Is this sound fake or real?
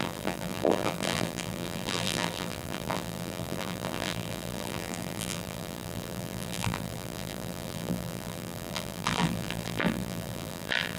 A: fake